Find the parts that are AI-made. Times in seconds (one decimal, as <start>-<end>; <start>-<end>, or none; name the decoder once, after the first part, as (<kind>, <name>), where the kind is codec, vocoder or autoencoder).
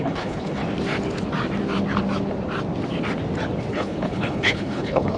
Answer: 0.0-0.6 (codec, HILCodec); 3.7-5.2